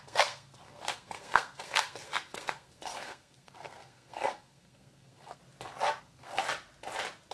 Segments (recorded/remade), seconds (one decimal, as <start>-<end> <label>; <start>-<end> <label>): 0.0-5.4 remade; 5.4-6.0 recorded; 6.0-6.4 remade; 6.4-7.3 recorded